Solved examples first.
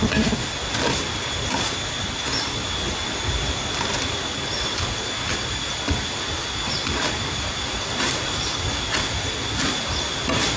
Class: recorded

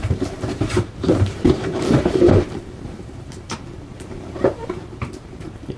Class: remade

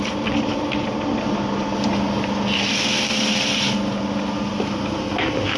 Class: recorded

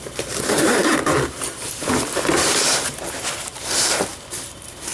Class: remade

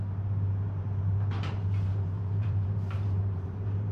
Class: remade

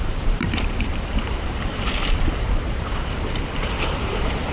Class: remade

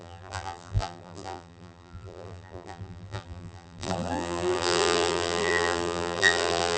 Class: remade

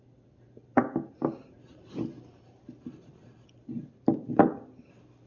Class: recorded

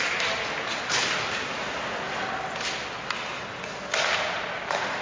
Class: recorded